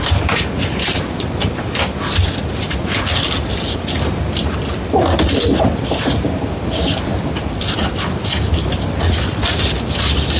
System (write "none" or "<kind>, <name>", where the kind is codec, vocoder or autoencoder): none